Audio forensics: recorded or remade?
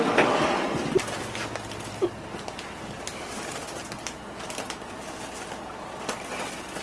recorded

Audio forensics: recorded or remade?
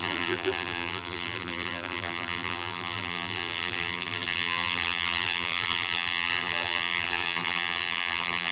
remade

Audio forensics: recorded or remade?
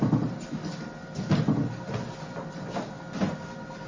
recorded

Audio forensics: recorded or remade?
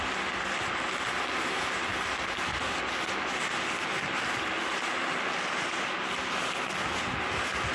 recorded